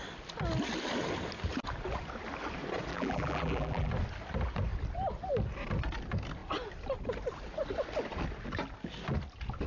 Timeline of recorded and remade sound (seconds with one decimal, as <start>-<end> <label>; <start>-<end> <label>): 0.0-2.9 recorded; 2.9-3.9 remade; 3.9-9.7 recorded